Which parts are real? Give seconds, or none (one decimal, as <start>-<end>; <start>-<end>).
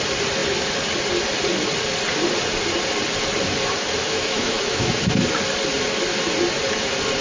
0.0-4.0; 5.0-7.2